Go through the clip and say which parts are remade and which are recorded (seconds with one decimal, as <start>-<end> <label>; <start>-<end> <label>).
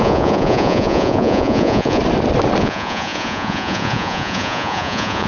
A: 0.0-2.0 remade; 2.0-2.6 recorded; 2.6-5.3 remade